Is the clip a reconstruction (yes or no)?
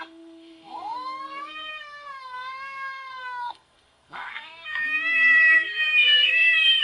yes